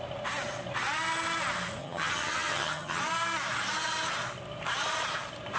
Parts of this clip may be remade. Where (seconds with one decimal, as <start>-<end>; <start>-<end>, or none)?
1.8-3.0